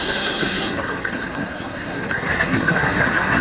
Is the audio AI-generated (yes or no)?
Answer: yes